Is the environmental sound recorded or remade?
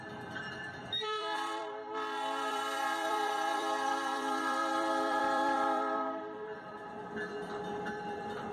remade